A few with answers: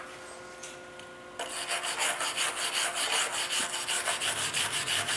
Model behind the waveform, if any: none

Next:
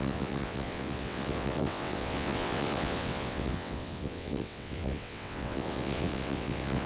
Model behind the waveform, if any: vocoder, WaveNeXt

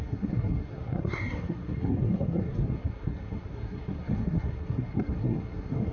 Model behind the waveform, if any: codec, SNAC